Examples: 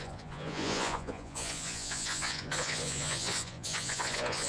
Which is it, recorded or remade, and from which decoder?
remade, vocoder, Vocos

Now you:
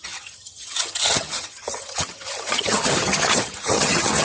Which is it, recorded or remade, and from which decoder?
remade, vocoder, HiFi-GAN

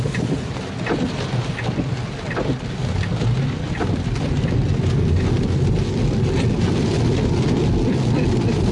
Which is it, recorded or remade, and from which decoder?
recorded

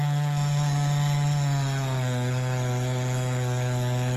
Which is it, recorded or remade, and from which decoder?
remade, codec, SNAC